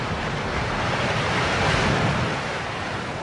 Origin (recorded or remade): recorded